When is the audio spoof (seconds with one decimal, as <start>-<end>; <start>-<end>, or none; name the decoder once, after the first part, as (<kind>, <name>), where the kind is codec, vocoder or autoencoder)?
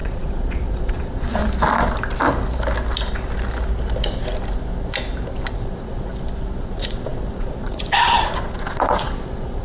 0.0-1.4 (vocoder, Vocos); 5.5-6.1; 6.6-9.6